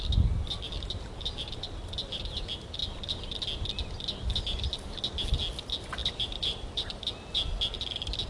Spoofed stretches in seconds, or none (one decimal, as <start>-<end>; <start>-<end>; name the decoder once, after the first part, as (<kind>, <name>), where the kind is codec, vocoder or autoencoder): 6.0-7.1 (vocoder, BigVGAN v2)